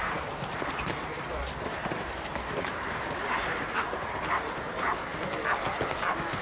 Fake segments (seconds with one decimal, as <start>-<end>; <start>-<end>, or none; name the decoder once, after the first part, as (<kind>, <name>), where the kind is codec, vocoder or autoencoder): 0.0-5.1 (vocoder, BigVGAN v2); 5.9-6.4